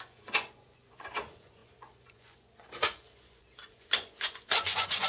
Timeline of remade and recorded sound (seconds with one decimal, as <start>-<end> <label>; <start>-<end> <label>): 0.0-5.1 remade